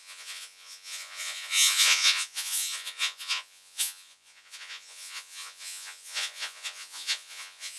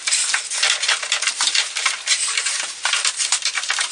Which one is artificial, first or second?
first